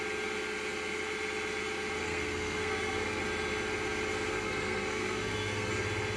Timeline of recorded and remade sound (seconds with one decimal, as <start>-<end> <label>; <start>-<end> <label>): 0.0-2.0 recorded; 2.0-3.2 remade; 3.2-4.3 recorded; 4.3-5.7 remade; 5.7-6.2 recorded